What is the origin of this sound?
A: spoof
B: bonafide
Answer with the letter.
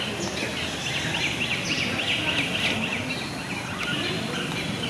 B